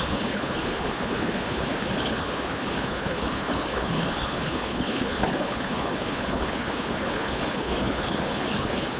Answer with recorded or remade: remade